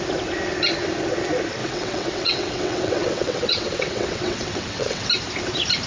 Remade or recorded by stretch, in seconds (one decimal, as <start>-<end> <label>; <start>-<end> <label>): 0.0-1.6 recorded; 1.6-5.1 remade; 5.1-5.9 recorded